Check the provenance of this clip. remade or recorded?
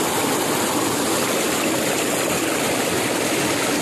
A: recorded